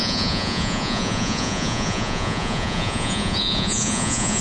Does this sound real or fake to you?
fake